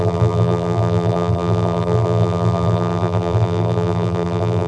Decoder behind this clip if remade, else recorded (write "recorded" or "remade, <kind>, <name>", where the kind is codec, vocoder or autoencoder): remade, vocoder, BigVGAN v2